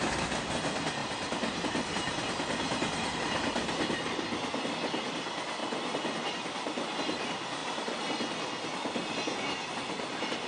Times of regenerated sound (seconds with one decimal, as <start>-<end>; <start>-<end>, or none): none

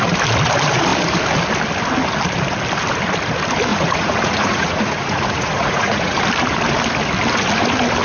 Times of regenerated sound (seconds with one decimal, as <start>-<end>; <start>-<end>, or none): 3.7-6.2

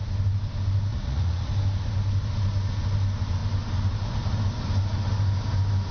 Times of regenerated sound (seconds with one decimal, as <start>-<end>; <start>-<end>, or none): 0.9-1.5

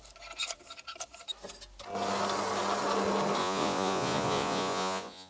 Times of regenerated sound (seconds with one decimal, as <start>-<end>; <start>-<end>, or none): 3.4-5.3

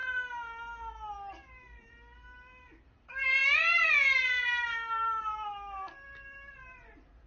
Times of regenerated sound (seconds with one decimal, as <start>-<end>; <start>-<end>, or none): none

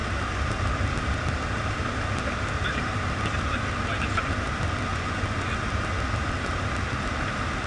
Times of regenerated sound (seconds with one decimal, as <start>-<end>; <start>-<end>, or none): 4.9-5.5

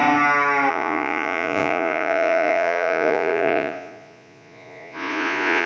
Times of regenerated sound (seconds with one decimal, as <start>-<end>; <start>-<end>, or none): 0.7-5.7

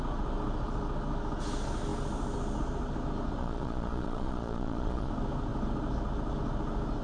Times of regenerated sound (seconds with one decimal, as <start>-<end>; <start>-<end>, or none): 3.4-5.1